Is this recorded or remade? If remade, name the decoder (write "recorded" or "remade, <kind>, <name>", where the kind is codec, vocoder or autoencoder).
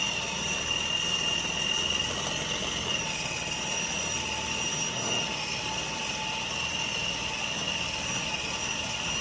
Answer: recorded